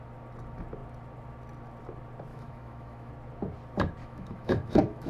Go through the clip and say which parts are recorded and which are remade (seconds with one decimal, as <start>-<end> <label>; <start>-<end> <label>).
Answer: 0.0-2.3 recorded; 2.3-3.1 remade; 3.1-4.0 recorded; 4.0-5.1 remade